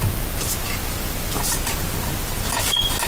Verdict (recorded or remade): recorded